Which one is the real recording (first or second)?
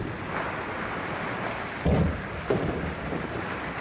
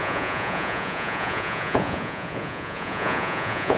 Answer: first